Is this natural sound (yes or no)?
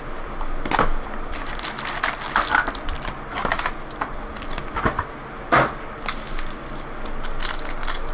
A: yes